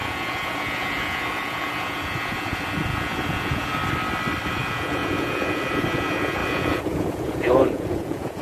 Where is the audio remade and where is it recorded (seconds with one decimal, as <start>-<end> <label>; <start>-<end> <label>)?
0.0-3.8 remade; 3.8-4.5 recorded; 4.5-8.4 remade